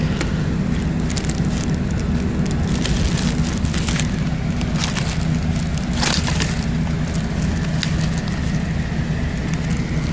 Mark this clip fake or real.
real